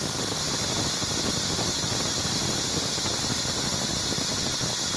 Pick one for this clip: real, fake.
real